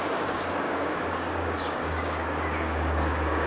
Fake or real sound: fake